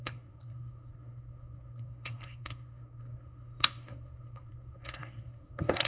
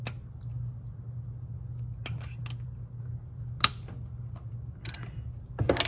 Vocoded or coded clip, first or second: first